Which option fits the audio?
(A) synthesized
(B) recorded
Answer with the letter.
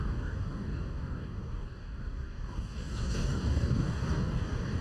A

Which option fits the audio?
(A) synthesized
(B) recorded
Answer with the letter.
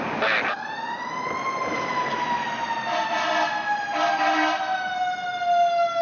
B